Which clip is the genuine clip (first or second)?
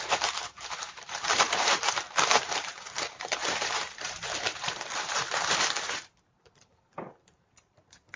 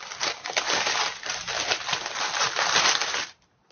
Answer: second